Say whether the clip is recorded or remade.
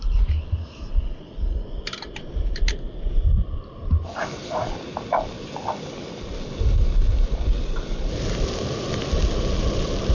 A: recorded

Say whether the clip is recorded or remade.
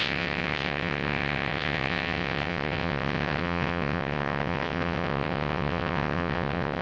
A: remade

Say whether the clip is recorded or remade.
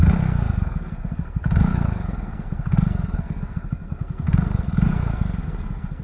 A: remade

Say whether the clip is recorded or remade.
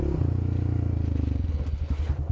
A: recorded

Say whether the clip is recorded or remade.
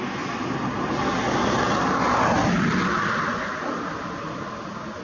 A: recorded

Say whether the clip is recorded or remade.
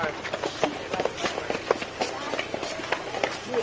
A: recorded